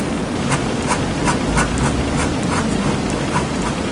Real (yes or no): yes